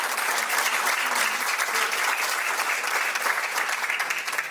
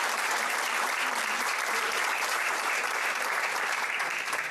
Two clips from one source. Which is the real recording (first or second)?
first